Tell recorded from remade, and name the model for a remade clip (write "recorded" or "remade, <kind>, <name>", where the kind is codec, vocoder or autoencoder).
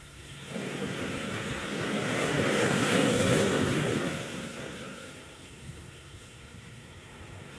remade, codec, SNAC